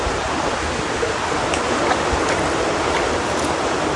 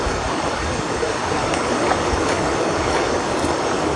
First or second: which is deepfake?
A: second